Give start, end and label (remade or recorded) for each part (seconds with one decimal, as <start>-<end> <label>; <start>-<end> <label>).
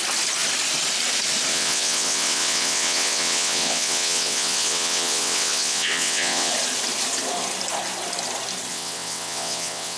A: 0.0-1.5 recorded; 1.5-6.5 remade; 6.5-8.7 recorded; 8.7-10.0 remade